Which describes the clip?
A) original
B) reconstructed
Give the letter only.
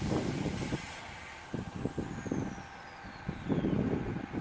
A